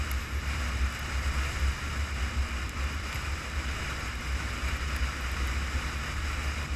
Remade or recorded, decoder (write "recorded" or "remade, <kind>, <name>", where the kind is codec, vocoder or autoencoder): recorded